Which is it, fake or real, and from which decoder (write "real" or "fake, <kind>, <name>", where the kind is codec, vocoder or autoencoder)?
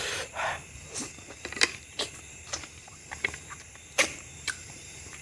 fake, vocoder, BigVGAN v2